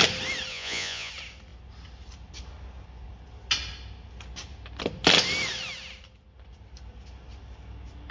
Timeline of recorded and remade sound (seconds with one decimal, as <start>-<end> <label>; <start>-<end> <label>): 0.0-0.5 recorded; 0.5-1.1 remade; 1.1-8.1 recorded